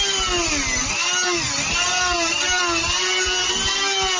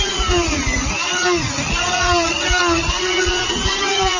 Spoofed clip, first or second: second